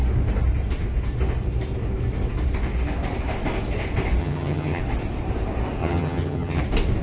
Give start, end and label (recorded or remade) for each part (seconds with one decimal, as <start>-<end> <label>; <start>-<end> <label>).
0.0-4.2 recorded; 4.2-4.8 remade; 4.8-5.8 recorded; 5.8-6.6 remade; 6.6-7.0 recorded